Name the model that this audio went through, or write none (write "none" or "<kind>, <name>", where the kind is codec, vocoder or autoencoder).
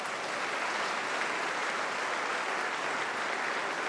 none